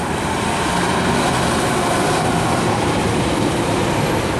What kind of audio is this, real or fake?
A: real